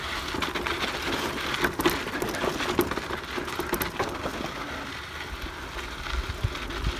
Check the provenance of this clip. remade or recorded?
recorded